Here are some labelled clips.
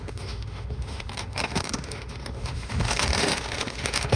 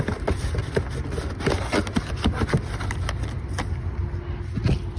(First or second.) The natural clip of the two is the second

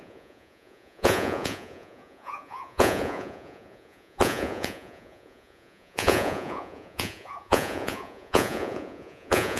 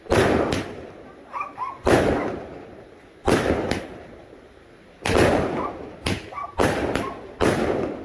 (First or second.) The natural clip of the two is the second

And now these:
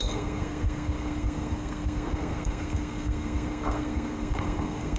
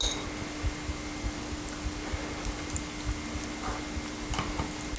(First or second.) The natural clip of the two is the second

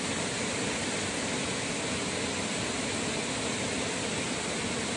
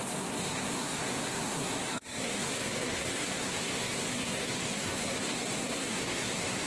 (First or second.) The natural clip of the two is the first